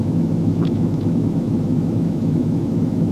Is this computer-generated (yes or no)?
yes